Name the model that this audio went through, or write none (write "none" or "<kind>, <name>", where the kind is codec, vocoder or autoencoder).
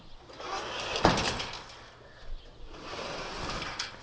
none